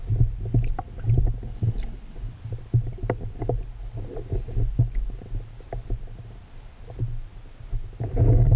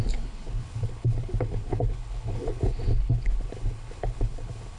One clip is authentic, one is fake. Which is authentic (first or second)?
first